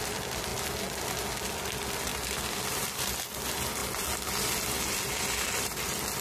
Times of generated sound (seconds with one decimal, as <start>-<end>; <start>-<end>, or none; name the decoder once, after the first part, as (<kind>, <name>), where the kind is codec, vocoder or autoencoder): 2.1-3.1 (vocoder, BigVGAN v2)